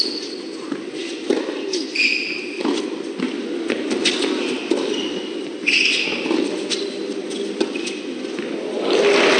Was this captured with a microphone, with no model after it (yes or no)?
yes